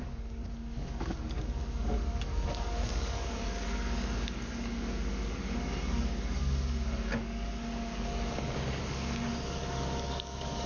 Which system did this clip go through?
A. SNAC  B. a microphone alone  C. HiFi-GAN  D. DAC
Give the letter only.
D